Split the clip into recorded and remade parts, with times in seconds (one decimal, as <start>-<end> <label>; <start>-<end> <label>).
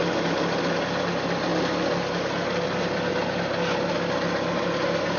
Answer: 0.0-5.2 recorded